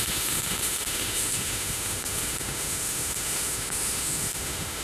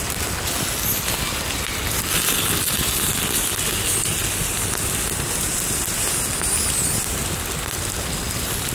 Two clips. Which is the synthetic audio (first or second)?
first